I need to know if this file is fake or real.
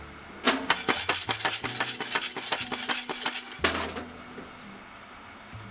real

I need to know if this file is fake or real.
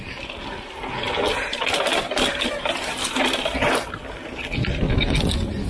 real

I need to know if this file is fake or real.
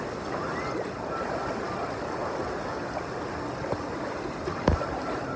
real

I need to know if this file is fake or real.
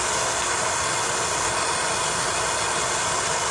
real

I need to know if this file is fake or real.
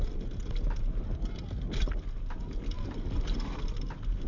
real